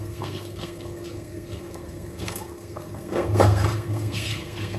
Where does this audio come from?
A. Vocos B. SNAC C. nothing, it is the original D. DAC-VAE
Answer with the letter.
B